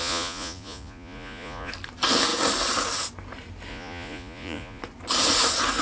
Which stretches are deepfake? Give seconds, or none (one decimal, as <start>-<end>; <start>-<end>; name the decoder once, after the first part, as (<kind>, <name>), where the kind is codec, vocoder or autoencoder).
0.0-1.7 (vocoder, Vocos); 3.7-4.8